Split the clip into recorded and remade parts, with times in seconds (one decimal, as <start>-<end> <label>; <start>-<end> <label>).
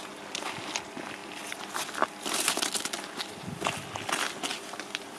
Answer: 0.0-4.5 recorded; 4.5-5.2 remade